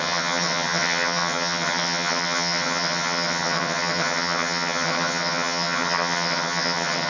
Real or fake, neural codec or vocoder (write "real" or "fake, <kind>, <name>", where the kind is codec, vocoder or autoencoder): fake, vocoder, HiFi-GAN